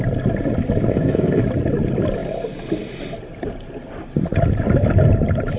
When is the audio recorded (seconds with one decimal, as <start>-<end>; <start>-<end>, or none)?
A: 0.0-0.9; 1.4-5.6